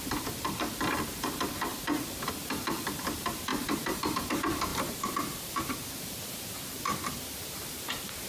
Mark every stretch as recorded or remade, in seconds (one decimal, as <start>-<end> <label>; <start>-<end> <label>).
0.0-3.5 recorded; 3.5-4.2 remade; 4.2-4.7 recorded; 4.7-5.6 remade; 5.6-8.3 recorded